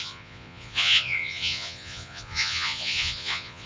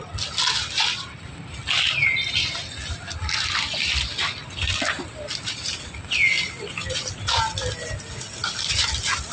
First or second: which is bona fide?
second